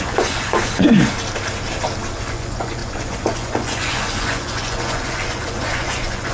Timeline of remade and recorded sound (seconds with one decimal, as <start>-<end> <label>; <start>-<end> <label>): 0.0-1.1 remade; 1.1-2.2 recorded; 2.2-6.3 remade